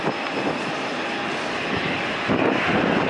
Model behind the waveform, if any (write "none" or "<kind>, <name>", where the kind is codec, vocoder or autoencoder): none